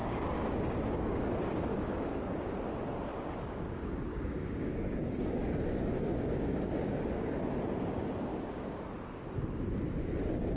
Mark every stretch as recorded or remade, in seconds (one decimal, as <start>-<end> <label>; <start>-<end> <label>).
0.0-1.2 remade; 1.2-1.7 recorded; 1.7-2.5 remade; 2.5-3.1 recorded; 3.1-7.4 remade; 7.4-8.3 recorded; 8.3-8.9 remade; 8.9-10.6 recorded